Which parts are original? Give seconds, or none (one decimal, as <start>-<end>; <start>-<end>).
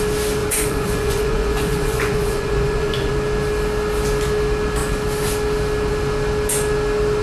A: 0.0-0.4; 3.1-7.2